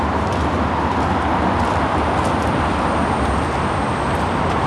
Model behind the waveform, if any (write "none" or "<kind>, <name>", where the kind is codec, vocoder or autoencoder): none